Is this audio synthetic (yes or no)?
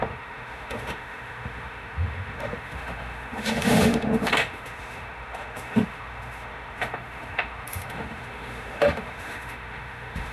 yes